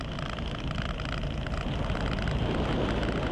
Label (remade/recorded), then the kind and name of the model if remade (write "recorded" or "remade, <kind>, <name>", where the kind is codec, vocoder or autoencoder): recorded